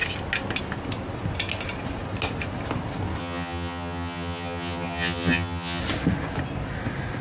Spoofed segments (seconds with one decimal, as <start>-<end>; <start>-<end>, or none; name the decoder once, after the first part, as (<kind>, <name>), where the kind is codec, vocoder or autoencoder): 3.2-5.8 (vocoder, HiFi-GAN)